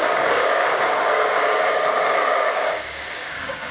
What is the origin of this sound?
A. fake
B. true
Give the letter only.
A